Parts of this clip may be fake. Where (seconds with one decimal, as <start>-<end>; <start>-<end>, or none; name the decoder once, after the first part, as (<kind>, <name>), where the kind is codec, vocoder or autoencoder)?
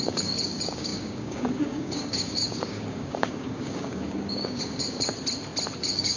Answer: 0.0-5.1 (codec, DAC); 5.8-6.2